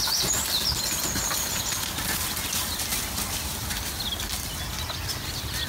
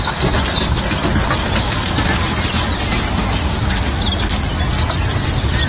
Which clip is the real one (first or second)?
second